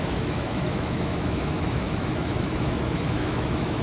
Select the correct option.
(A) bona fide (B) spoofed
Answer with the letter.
B